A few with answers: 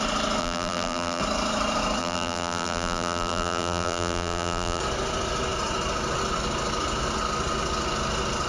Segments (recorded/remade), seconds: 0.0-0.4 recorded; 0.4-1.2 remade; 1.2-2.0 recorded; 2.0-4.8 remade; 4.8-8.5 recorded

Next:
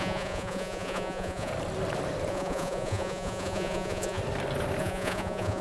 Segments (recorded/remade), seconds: 0.0-1.5 remade; 1.5-2.3 recorded; 2.3-4.2 remade; 4.2-4.8 recorded; 4.8-5.6 remade

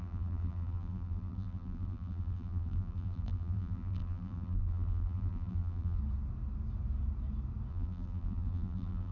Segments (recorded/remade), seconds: 0.0-6.0 remade; 6.0-7.7 recorded; 7.7-9.1 remade

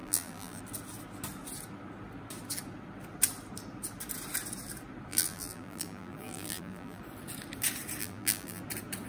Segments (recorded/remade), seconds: 0.0-0.6 remade; 0.6-5.1 recorded; 5.1-7.0 remade; 7.0-8.0 recorded; 8.0-8.6 remade; 8.6-9.1 recorded

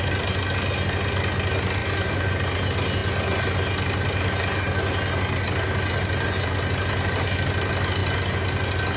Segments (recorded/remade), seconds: 0.0-1.8 recorded; 1.8-2.3 remade; 2.3-9.0 recorded

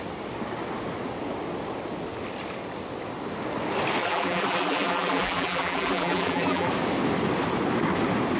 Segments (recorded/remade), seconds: 0.0-4.0 recorded; 4.0-6.7 remade; 6.7-8.4 recorded